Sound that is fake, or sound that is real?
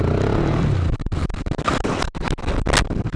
real